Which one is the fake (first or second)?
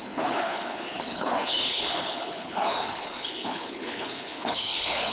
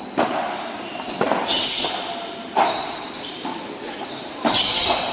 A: first